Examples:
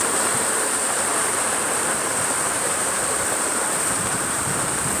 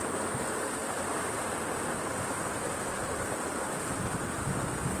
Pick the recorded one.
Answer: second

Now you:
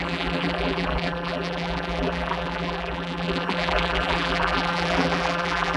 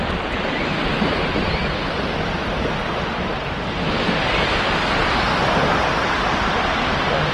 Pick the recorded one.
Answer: second